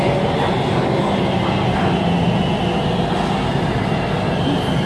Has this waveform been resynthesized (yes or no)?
no